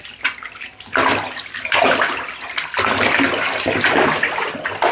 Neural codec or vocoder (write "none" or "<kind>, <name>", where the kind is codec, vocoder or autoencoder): none